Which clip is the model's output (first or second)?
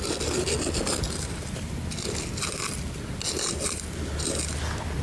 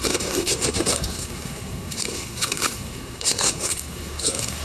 second